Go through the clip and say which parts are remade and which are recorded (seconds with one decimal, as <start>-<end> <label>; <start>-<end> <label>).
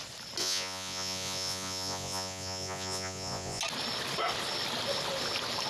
0.0-0.4 recorded; 0.4-3.6 remade; 3.6-5.7 recorded